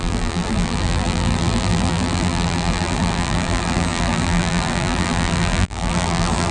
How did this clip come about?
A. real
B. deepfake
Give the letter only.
B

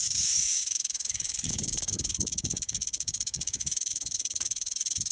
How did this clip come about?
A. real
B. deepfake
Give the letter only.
B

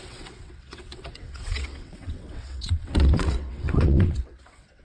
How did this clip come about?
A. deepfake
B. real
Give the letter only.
A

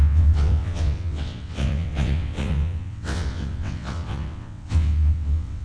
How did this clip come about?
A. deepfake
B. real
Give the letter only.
A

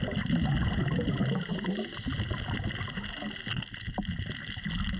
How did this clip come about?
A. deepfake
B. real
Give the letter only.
B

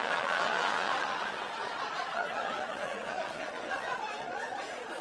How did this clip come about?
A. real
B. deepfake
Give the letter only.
B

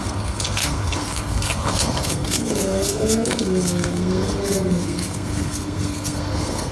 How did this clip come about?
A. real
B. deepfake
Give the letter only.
B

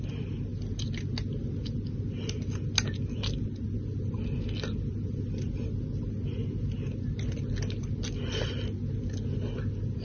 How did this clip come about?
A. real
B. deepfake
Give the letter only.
A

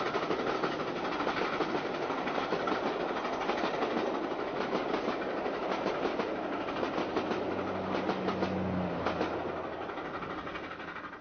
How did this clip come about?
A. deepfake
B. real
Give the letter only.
B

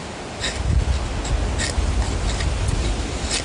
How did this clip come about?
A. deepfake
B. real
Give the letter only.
B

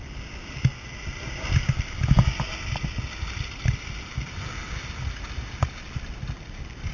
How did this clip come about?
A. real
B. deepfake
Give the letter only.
A